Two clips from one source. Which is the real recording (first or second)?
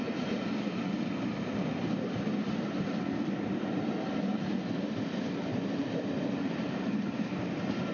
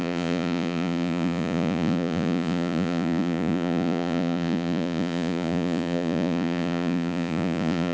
first